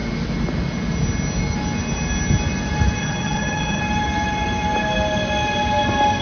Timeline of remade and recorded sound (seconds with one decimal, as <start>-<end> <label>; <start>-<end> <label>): 0.0-3.0 recorded; 3.0-3.8 remade; 3.8-6.2 recorded